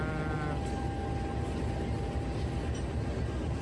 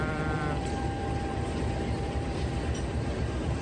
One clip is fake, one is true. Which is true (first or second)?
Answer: first